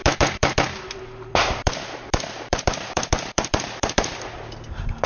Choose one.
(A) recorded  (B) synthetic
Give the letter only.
B